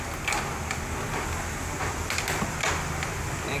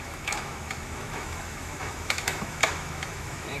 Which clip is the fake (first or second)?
second